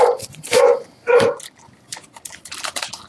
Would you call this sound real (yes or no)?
no